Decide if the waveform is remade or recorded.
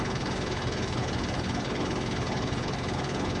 remade